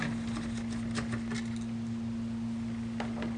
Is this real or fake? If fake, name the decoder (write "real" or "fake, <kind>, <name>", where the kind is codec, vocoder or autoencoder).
real